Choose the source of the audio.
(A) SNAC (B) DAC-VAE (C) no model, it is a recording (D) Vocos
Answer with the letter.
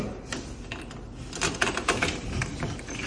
C